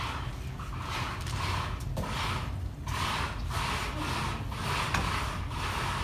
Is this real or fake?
real